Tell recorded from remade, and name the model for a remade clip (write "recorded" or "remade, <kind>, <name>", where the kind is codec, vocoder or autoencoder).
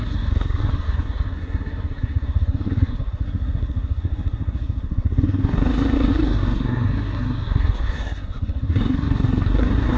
remade, codec, SNAC